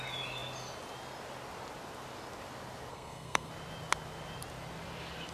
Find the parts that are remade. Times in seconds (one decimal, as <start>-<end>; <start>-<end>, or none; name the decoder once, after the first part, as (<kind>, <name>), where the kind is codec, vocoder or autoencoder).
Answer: 2.9-3.5 (codec, SNAC)